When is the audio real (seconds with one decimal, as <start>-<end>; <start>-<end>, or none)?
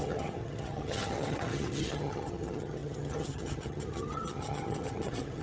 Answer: none